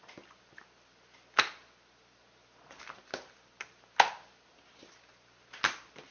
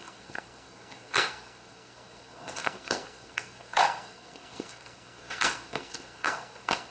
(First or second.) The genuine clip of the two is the first